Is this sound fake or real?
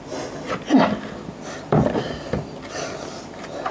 real